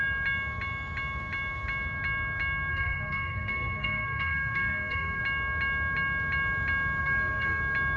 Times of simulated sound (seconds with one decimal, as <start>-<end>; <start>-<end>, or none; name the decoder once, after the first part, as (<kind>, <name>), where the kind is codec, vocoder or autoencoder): 2.7-5.2 (codec, SNAC); 7.0-7.6